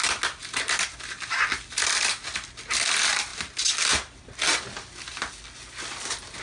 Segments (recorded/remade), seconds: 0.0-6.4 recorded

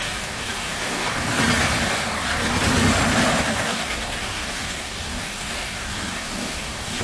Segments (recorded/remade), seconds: 0.0-1.4 remade; 1.4-1.9 recorded; 1.9-2.4 remade; 2.4-3.4 recorded; 3.4-7.0 remade

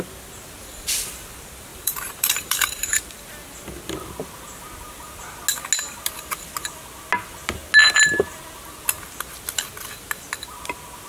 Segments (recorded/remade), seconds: 0.0-1.7 recorded; 1.7-3.0 remade; 3.0-11.1 recorded

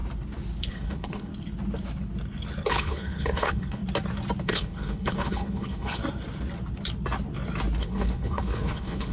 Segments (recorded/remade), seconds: 0.0-0.7 recorded; 0.7-1.3 remade; 1.3-2.7 recorded; 2.7-3.8 remade; 3.8-4.4 recorded; 4.4-6.0 remade; 6.0-7.8 recorded; 7.8-9.1 remade